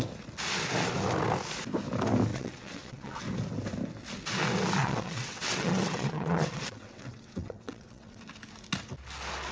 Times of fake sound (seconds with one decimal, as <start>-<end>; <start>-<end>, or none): 2.3-3.2; 4.8-8.2